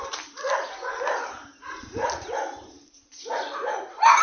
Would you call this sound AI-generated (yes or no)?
yes